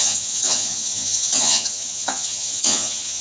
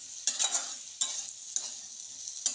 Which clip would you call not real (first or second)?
first